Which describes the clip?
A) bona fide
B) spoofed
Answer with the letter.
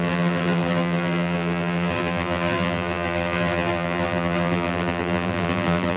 B